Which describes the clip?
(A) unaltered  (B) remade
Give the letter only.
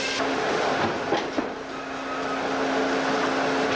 A